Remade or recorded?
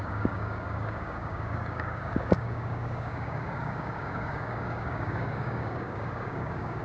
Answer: remade